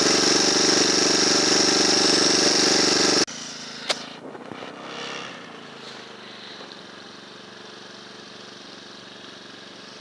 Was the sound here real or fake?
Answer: real